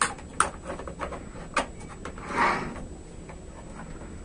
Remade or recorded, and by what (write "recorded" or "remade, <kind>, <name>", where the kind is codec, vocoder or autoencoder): recorded